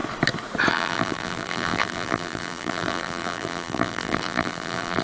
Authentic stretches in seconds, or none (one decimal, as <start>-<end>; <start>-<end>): 0.0-0.7